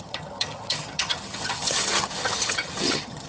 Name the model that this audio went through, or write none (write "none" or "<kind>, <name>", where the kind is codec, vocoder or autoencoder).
vocoder, HiFi-GAN